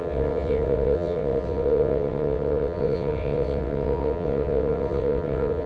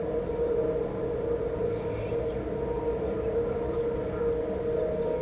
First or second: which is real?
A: second